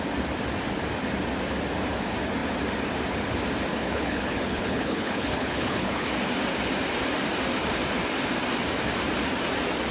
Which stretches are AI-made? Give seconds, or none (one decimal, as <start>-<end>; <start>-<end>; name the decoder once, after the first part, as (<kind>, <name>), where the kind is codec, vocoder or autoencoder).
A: 3.8-6.1 (codec, HILCodec)